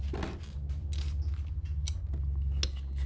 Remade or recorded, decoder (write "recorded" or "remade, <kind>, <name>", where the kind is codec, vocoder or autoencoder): recorded